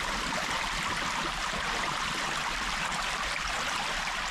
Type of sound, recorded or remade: recorded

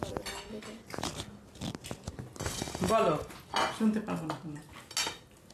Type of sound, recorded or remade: recorded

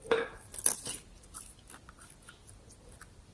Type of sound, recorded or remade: remade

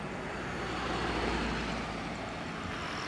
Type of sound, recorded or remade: recorded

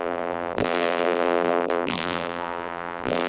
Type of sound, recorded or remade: remade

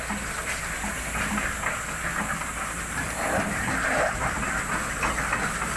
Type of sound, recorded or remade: recorded